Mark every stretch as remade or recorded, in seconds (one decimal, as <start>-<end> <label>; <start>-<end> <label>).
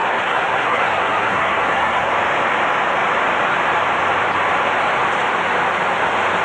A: 0.0-2.1 remade; 2.1-6.4 recorded